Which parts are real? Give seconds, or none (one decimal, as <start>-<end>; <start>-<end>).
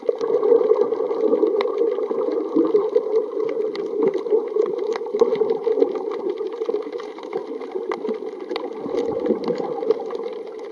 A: 7.4-9.8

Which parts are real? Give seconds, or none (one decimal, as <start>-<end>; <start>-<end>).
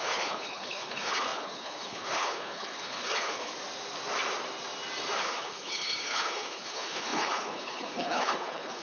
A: 3.5-5.2